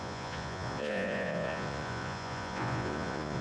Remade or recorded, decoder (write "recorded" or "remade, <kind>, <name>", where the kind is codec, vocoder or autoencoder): remade, vocoder, Vocos